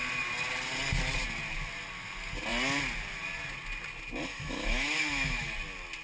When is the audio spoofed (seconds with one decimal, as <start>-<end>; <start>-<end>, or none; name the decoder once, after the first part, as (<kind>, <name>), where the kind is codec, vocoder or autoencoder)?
4.3-5.5 (autoencoder, DAC-VAE)